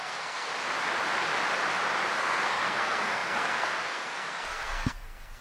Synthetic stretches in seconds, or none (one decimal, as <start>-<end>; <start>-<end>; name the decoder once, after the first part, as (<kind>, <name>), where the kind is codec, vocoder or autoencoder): 0.0-0.5 (codec, SNAC); 2.2-5.4